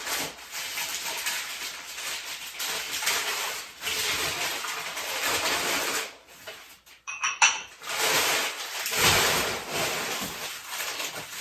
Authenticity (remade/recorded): recorded